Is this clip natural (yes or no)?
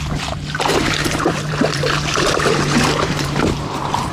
no